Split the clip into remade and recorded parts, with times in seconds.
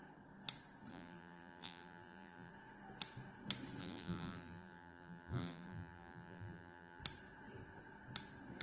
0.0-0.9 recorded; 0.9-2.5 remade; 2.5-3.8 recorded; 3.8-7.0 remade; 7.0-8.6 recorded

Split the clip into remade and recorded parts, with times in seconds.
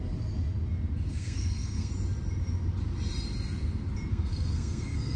0.0-1.1 recorded; 1.1-1.9 remade; 1.9-4.1 recorded; 4.1-5.2 remade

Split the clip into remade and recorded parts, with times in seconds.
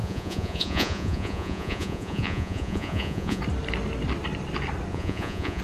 0.0-3.4 remade; 3.4-4.9 recorded; 4.9-5.6 remade